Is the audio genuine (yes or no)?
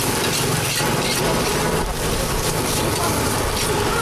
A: yes